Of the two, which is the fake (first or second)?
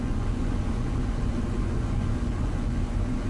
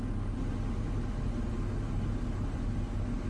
first